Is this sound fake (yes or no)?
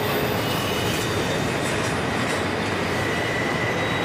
no